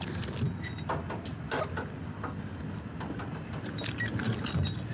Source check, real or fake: real